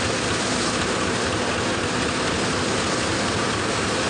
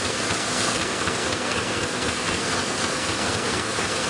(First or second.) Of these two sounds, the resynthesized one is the second